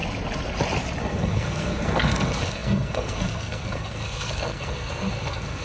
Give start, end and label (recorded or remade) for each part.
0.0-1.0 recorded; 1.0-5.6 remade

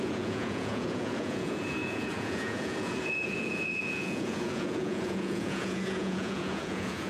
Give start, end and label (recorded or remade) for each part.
0.0-7.1 remade

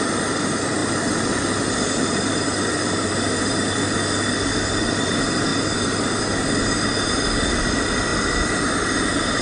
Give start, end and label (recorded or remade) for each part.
0.0-0.8 recorded; 0.8-5.1 remade; 5.1-5.5 recorded; 5.5-6.2 remade; 6.2-9.4 recorded

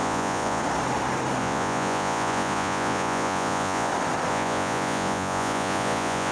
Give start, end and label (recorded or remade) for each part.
0.0-0.6 remade; 0.6-1.4 recorded; 1.4-3.9 remade; 3.9-4.3 recorded; 4.3-6.3 remade